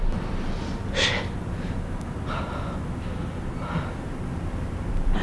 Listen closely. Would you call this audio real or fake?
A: real